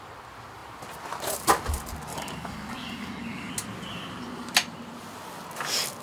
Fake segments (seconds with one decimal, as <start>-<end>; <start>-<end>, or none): 2.1-3.5